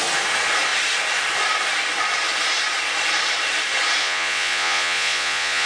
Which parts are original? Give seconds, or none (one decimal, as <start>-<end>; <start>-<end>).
0.0-4.0